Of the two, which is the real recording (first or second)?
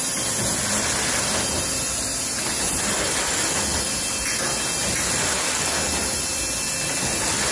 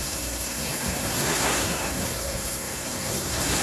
first